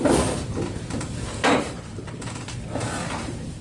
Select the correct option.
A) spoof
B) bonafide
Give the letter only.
B